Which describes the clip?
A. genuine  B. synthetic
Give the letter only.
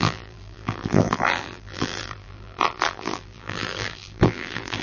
B